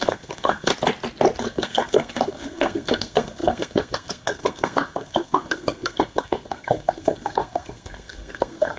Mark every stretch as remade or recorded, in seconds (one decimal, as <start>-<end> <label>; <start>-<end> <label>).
0.0-0.7 remade; 0.7-1.4 recorded; 1.4-8.8 remade